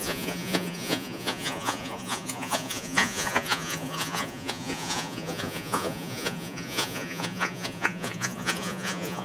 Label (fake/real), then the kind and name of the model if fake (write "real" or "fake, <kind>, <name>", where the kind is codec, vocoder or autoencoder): fake, vocoder, Vocos